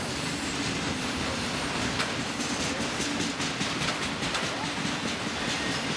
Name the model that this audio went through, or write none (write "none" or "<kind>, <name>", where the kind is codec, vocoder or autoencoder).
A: none